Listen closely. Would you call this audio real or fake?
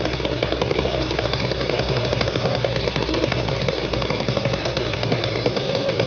fake